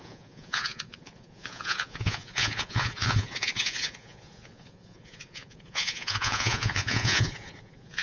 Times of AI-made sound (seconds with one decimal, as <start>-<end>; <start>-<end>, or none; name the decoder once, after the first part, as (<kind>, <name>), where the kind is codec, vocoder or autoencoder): 0.0-8.0 (vocoder, Vocos)